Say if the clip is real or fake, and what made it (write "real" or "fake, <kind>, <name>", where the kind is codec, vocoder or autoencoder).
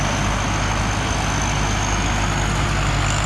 real